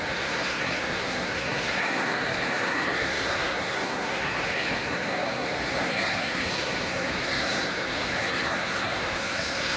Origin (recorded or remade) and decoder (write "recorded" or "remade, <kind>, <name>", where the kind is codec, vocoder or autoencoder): remade, codec, SNAC